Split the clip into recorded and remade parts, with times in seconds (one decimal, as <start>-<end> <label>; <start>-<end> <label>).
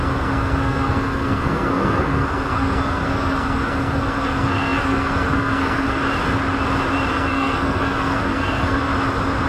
0.0-6.0 remade; 6.0-7.1 recorded; 7.1-8.9 remade; 8.9-9.5 recorded